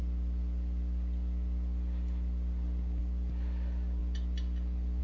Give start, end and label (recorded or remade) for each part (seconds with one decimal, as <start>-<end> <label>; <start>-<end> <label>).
0.0-5.0 recorded